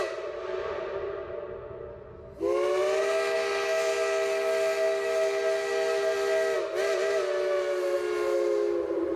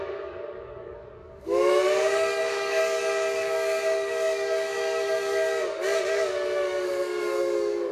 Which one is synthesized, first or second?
second